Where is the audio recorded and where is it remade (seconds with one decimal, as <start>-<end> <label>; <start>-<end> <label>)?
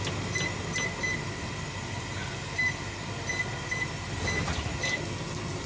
0.0-2.2 recorded; 2.2-2.8 remade; 2.8-5.7 recorded